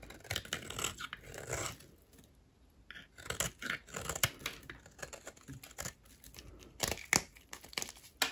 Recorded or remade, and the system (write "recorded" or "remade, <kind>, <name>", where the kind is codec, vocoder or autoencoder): recorded